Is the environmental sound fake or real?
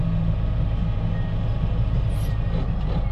real